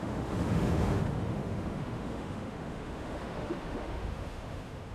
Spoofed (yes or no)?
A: yes